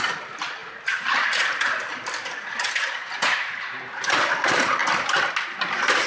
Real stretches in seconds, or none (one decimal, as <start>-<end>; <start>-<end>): 0.0-6.1